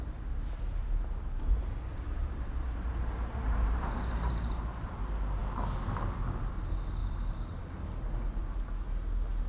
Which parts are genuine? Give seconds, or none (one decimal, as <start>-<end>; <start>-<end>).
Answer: 0.0-1.9; 4.6-7.0; 7.6-9.5